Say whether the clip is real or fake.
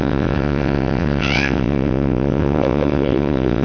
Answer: fake